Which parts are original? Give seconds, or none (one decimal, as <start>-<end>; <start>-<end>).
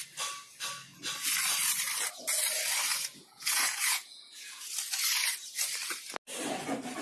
0.0-2.9; 4.7-7.0